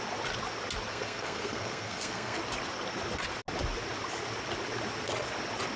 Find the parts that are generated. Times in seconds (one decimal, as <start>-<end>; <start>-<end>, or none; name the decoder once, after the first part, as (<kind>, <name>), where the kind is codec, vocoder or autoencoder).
0.9-2.4 (codec, SNAC)